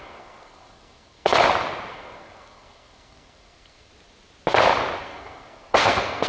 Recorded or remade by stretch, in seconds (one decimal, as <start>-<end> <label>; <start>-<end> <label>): 0.0-1.3 remade; 1.3-1.9 recorded; 1.9-3.9 remade; 3.9-5.0 recorded; 5.0-6.3 remade